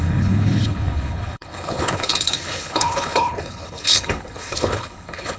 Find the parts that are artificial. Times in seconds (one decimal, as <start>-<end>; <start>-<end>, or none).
0.0-5.4